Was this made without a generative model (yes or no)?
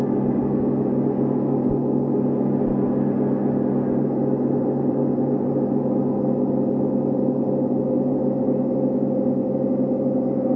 yes